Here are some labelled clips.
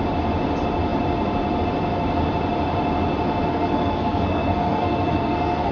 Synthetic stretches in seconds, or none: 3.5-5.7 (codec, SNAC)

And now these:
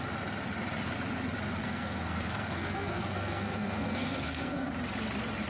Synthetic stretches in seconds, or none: 1.6-4.7 (codec, SNAC)

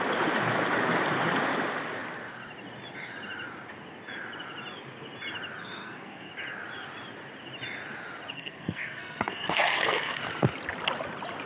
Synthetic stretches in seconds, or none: 5.6-6.3 (codec, SNAC); 8.3-10.2

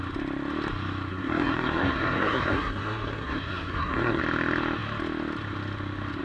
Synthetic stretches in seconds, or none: 1.1-4.2 (codec, SNAC)

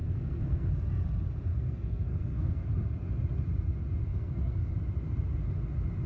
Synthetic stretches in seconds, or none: 0.0-0.7 (codec, SNAC); 1.5-2.7; 4.1-4.7

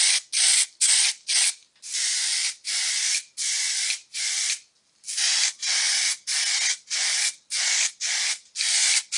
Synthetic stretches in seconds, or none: none

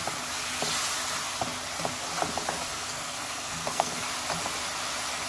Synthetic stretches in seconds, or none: 2.7-4.0 (codec, SNAC)

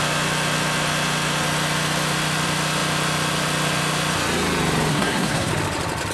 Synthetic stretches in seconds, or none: 4.9-5.5 (codec, SNAC)